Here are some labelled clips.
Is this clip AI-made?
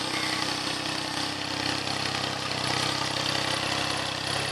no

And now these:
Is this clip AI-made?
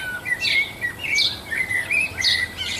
no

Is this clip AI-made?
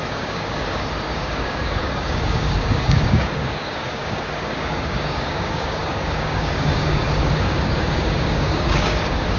yes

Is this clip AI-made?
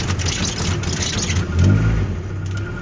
no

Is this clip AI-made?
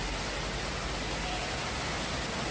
no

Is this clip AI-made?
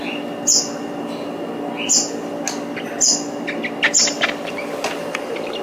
no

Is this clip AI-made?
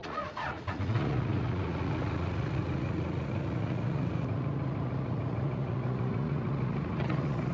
yes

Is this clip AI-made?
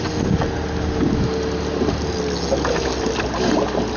no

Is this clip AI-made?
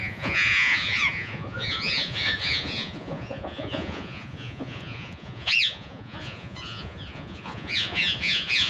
yes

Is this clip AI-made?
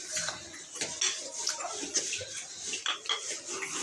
no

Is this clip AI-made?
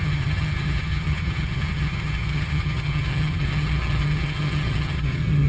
yes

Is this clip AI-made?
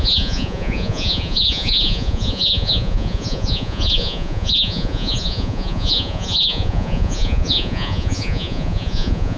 yes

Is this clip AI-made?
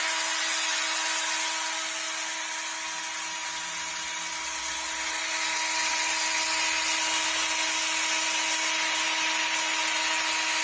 no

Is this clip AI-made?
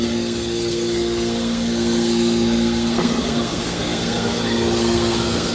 yes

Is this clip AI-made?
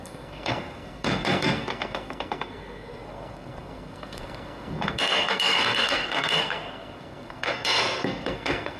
yes